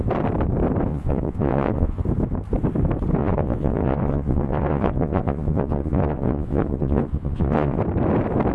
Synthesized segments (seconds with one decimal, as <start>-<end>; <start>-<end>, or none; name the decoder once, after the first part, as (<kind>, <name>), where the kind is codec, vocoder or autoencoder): 0.9-2.0 (vocoder, Vocos); 3.2-7.8